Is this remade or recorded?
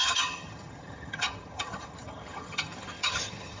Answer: remade